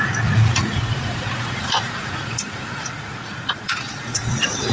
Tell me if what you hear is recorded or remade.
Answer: remade